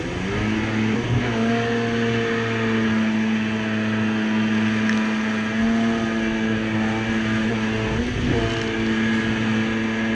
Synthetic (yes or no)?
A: no